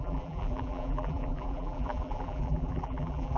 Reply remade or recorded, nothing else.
remade